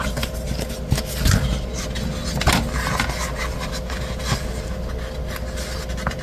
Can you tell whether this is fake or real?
real